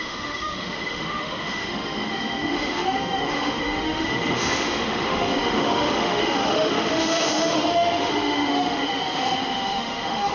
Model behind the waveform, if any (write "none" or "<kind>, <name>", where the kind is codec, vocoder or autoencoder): autoencoder, DAC-VAE